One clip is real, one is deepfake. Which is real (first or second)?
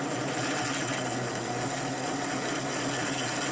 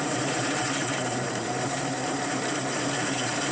first